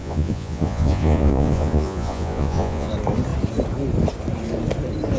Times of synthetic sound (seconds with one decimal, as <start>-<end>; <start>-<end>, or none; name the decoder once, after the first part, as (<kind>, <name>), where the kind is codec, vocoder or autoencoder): 0.0-2.9 (vocoder, Vocos)

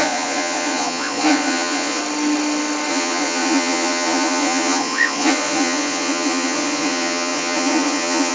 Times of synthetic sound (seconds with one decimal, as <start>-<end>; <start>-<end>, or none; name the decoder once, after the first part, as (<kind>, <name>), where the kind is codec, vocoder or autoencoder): 0.0-2.0 (vocoder, Vocos); 2.9-8.3